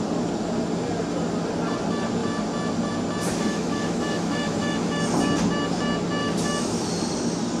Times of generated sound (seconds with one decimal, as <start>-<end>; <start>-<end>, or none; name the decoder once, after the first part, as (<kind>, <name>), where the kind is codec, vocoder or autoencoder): 3.5-5.0 (autoencoder, DAC-VAE); 6.2-6.9